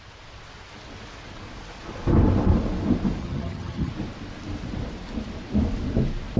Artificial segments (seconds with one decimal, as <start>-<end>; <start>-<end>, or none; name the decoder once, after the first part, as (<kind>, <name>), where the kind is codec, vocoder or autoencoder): 3.2-3.9 (vocoder, HiFi-GAN)